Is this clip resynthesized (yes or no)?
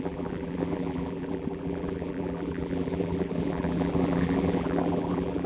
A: yes